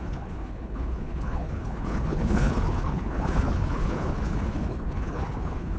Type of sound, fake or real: fake